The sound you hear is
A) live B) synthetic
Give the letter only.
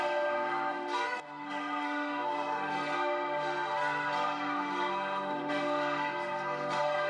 B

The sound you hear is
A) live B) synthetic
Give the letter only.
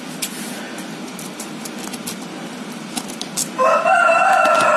A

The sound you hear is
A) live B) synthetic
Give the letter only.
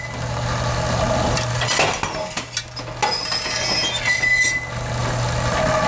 A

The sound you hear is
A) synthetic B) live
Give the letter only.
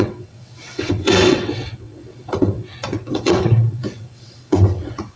A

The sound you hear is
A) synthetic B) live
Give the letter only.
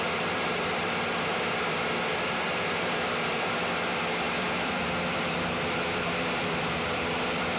A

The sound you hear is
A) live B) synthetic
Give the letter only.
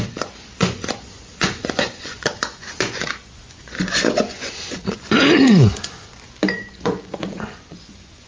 B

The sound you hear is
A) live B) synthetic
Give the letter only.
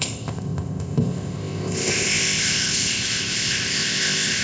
B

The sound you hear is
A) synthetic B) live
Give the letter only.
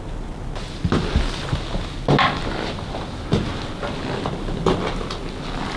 B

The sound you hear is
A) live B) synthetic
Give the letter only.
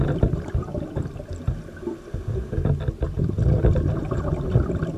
A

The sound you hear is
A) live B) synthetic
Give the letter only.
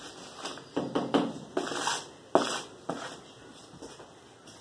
A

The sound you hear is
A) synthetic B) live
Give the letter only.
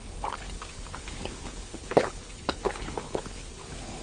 A